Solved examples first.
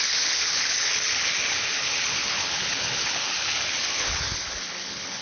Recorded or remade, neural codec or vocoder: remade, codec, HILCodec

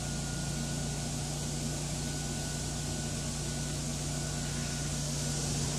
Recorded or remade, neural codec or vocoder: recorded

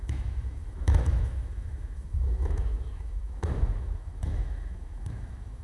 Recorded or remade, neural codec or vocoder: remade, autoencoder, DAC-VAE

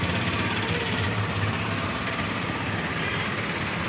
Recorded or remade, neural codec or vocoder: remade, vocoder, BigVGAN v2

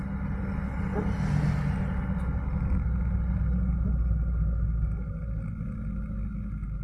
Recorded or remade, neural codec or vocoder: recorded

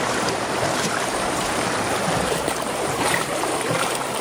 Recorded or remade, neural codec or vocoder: remade, vocoder, BigVGAN v2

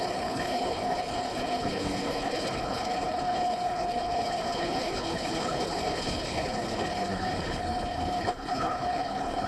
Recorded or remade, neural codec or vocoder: remade, codec, HILCodec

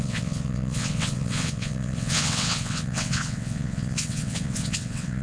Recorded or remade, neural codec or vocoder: remade, vocoder, WaveNeXt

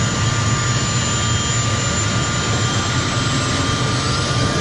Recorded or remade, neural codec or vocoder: recorded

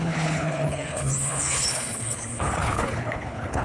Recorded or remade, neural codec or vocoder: remade, codec, HILCodec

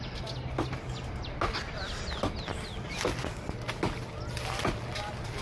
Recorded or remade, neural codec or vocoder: recorded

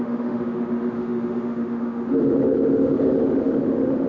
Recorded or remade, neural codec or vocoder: remade, autoencoder, DAC-VAE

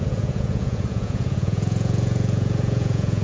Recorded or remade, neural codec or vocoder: remade, vocoder, Vocos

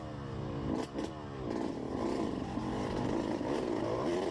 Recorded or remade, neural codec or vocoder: recorded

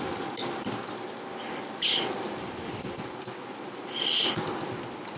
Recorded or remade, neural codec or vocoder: recorded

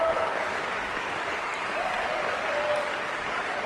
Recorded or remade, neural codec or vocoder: remade, codec, DAC